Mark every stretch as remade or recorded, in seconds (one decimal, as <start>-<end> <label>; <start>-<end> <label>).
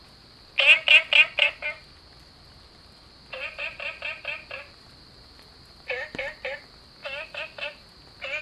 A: 0.0-8.4 recorded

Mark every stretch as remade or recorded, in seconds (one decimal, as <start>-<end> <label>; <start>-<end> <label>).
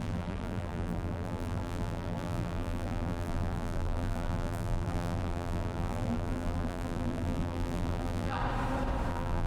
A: 0.0-8.4 remade; 8.4-9.1 recorded; 9.1-9.5 remade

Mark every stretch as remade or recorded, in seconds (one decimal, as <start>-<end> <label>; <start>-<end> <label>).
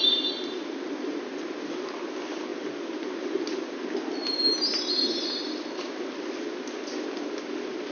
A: 0.0-7.9 recorded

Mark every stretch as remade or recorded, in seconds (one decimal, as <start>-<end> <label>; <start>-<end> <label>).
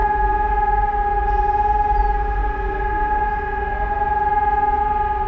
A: 0.0-1.2 recorded; 1.2-2.0 remade; 2.0-5.3 recorded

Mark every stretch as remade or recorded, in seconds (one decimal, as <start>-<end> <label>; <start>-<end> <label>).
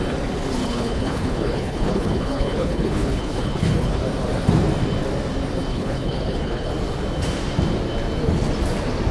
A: 0.0-0.6 recorded; 0.6-4.0 remade; 4.0-5.7 recorded; 5.7-6.7 remade; 6.7-9.1 recorded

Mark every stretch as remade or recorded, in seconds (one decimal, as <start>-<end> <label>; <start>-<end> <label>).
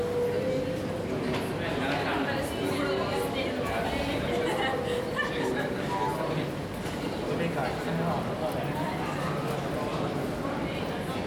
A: 0.0-11.3 recorded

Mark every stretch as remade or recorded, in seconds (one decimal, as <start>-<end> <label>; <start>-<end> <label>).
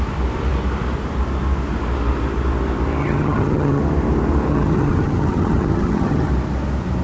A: 0.0-3.0 recorded; 3.0-3.8 remade; 3.8-4.5 recorded; 4.5-6.3 remade; 6.3-7.0 recorded